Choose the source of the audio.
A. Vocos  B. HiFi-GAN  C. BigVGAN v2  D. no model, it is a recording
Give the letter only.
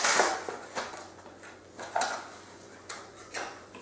A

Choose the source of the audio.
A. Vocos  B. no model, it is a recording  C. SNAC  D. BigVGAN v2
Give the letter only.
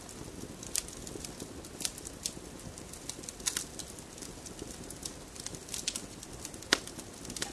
B